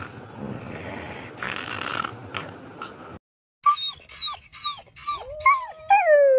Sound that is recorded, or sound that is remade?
recorded